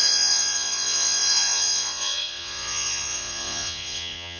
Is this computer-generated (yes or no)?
yes